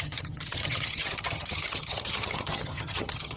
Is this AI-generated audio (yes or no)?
yes